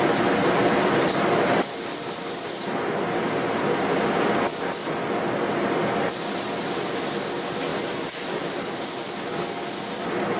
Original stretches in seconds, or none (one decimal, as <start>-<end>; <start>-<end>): 0.0-10.4